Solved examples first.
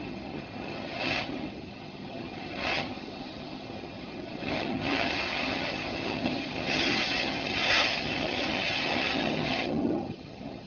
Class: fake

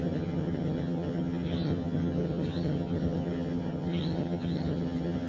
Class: fake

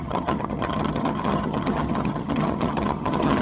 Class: fake